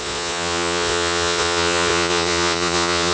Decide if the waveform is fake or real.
fake